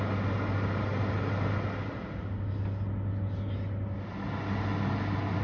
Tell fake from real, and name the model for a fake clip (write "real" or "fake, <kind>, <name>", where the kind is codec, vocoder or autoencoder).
real